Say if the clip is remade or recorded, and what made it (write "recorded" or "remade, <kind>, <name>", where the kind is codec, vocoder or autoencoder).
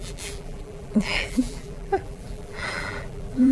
remade, vocoder, BigVGAN v2